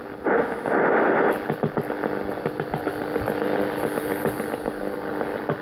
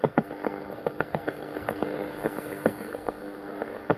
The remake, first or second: second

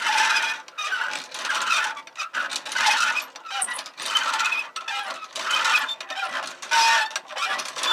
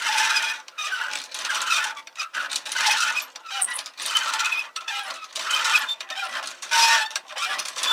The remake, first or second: second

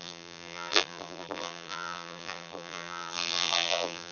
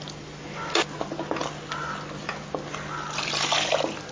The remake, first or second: first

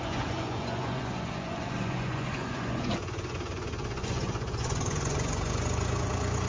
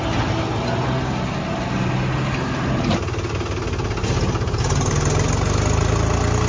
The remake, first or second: first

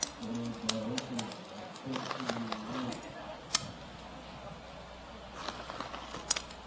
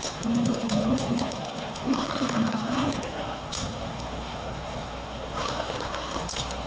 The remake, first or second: second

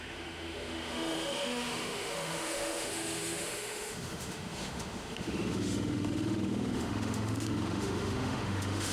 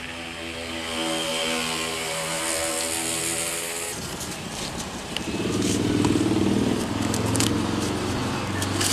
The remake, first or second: first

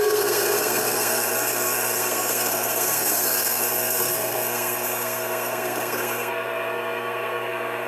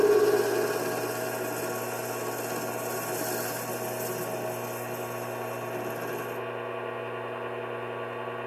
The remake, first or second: first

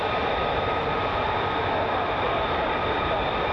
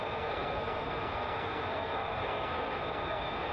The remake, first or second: second